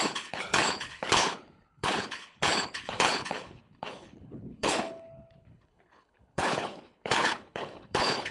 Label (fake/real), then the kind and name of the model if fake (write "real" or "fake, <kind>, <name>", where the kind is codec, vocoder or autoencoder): fake, codec, HILCodec